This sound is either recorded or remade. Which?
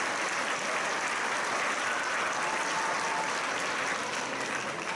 recorded